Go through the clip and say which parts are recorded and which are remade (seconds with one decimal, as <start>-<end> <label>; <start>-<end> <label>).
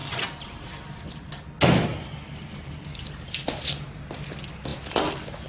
0.0-5.5 recorded